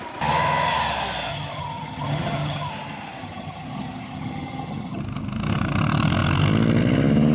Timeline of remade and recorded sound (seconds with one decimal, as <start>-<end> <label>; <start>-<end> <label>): 0.0-1.3 recorded; 1.3-2.7 remade; 2.7-3.2 recorded; 3.2-5.0 remade; 5.0-7.3 recorded